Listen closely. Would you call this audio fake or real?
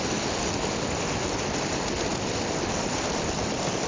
real